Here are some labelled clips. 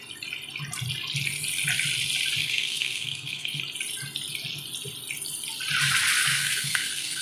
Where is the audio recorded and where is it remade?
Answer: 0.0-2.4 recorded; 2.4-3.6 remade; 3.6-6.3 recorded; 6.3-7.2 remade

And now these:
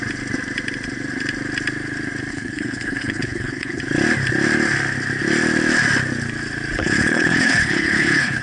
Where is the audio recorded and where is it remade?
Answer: 0.0-2.3 recorded; 2.3-3.8 remade; 3.8-6.8 recorded; 6.8-8.4 remade